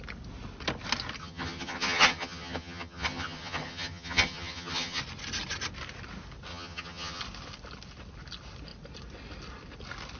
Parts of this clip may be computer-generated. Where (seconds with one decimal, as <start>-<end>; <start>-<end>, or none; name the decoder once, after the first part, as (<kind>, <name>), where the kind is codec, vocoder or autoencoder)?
1.2-5.0 (vocoder, HiFi-GAN); 6.5-7.2

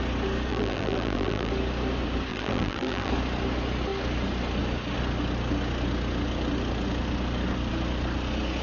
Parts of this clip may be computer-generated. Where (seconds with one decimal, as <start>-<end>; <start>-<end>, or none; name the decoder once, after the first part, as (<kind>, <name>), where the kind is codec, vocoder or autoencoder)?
0.5-1.5 (vocoder, BigVGAN v2); 2.3-3.1

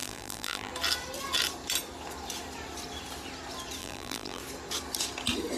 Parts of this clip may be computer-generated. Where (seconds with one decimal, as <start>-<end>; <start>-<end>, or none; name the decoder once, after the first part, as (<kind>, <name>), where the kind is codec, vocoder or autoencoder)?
0.0-0.7 (vocoder, BigVGAN v2); 3.8-4.4